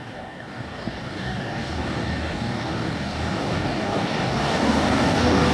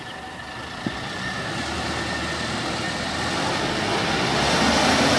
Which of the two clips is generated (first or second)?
first